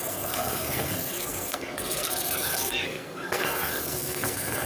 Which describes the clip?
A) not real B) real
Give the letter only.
A